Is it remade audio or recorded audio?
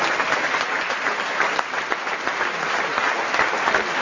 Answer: recorded